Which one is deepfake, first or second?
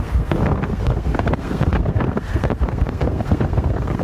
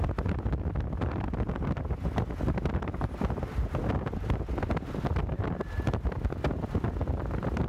first